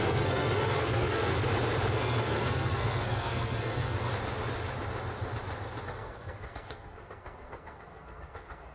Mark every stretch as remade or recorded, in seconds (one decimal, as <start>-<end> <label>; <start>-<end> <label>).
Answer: 0.0-1.3 remade; 1.3-1.9 recorded; 1.9-4.1 remade; 4.1-5.8 recorded; 5.8-8.7 remade